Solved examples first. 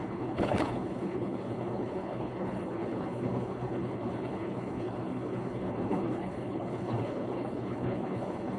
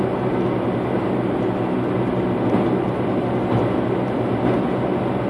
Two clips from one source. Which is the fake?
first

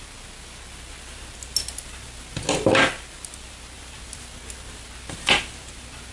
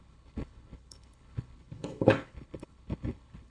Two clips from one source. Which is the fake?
second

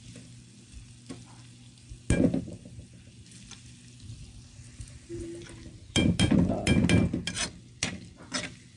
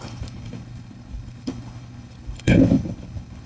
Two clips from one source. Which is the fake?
second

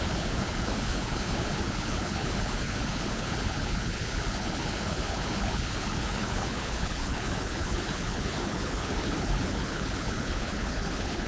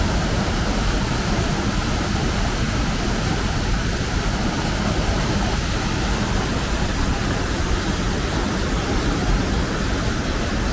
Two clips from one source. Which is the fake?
first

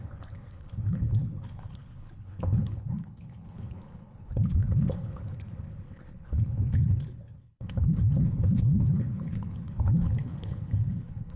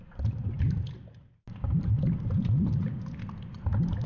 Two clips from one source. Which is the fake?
first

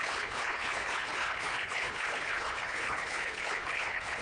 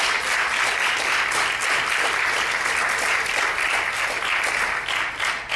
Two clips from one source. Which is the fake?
first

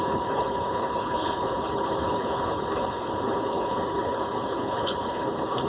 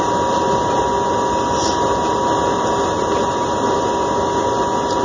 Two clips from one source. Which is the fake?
first